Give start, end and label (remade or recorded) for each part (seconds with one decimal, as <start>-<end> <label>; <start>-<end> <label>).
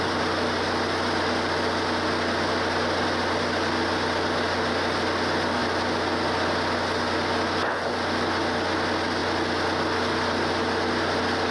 0.0-11.5 recorded